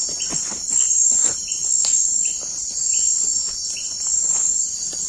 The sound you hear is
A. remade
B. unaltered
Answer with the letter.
B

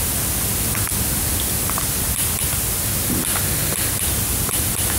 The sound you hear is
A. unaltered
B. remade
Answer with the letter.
A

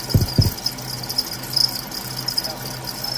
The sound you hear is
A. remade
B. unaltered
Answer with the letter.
B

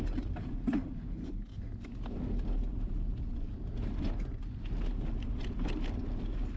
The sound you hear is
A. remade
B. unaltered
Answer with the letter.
B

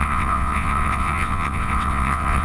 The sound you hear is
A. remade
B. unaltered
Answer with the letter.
A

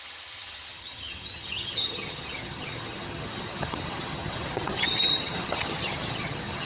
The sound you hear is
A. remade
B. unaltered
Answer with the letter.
A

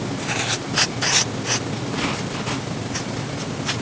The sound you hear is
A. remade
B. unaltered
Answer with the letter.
B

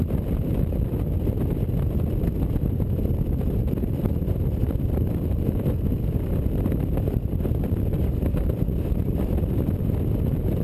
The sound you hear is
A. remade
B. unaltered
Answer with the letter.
A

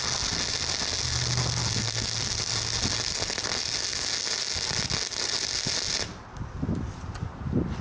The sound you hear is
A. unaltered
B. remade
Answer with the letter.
A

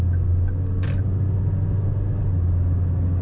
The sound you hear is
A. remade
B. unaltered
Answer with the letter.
B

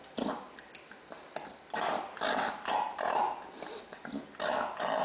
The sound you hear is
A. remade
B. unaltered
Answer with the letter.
B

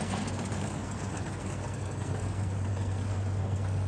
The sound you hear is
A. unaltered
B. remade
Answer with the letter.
B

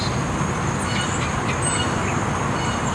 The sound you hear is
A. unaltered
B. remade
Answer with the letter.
B